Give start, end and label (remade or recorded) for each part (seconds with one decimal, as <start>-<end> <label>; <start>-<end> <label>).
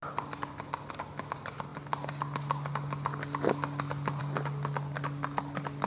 0.0-5.9 recorded